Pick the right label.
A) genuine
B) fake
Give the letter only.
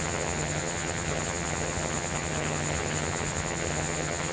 B